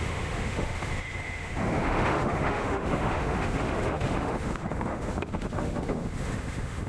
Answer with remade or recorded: remade